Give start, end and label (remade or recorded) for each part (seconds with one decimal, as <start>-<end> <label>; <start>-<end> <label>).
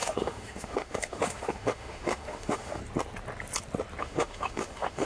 0.0-2.8 remade; 2.8-4.0 recorded; 4.0-5.1 remade